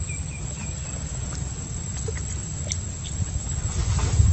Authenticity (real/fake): real